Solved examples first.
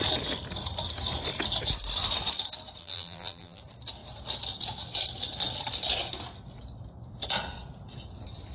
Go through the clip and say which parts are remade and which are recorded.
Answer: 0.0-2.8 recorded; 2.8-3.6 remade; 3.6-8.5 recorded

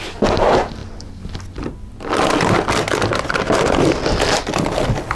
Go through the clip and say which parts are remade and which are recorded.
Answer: 0.0-5.1 recorded

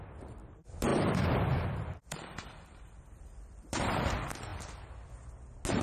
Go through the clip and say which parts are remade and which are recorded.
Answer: 0.0-0.9 recorded; 0.9-4.0 remade; 4.0-5.8 recorded